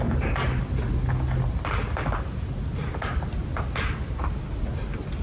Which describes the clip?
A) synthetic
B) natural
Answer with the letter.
B